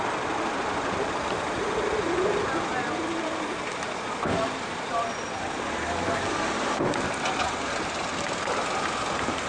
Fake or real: real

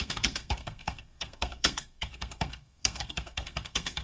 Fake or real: fake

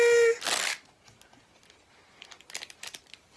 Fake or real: real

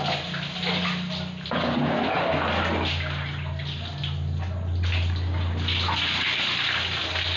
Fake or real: real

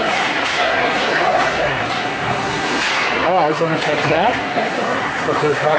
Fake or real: fake